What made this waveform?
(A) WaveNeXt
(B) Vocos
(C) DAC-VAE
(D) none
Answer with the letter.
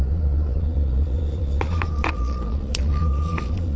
B